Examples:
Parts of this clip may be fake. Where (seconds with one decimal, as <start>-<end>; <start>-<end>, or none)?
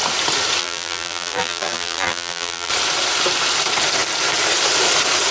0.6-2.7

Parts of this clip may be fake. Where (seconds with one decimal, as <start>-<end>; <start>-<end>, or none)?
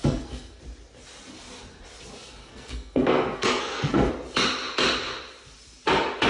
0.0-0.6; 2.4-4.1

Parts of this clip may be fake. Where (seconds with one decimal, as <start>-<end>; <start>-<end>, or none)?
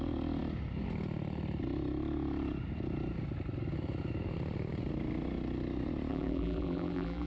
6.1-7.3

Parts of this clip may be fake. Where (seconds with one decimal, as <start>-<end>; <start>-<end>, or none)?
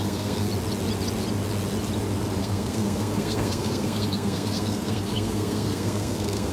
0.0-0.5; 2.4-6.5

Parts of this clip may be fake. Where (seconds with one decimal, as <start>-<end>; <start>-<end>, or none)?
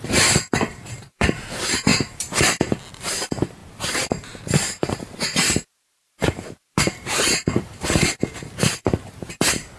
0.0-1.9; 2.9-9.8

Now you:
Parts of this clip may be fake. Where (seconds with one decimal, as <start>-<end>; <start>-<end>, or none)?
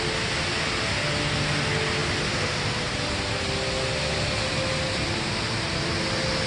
none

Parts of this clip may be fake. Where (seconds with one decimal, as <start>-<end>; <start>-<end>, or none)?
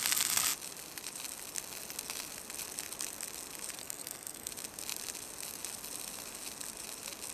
3.8-4.5